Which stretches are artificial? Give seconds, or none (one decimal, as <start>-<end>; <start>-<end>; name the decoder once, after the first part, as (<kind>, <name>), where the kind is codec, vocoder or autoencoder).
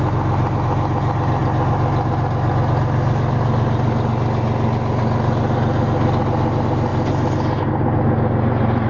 none